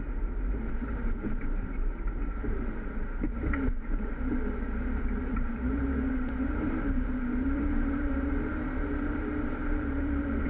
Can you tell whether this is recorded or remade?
remade